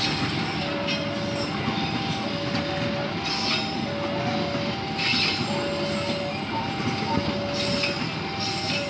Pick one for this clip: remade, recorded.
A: recorded